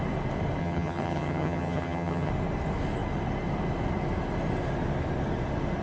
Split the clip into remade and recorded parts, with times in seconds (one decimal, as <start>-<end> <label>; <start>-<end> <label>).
0.0-0.6 recorded; 0.6-2.3 remade; 2.3-5.8 recorded